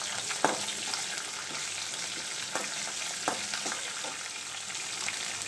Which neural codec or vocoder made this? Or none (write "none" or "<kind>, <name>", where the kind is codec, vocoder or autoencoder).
none